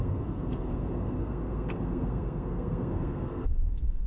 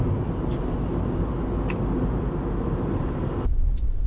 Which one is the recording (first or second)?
second